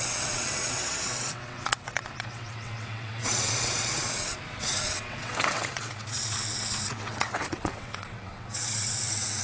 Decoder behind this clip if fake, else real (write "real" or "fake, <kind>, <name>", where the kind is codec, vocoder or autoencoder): fake, vocoder, WaveNeXt